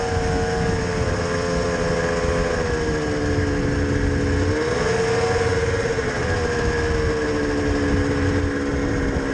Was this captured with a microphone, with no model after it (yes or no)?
yes